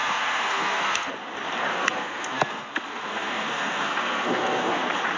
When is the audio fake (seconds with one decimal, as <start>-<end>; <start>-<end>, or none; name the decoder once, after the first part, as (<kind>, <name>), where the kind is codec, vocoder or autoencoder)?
0.0-1.1 (codec, SNAC); 1.7-4.8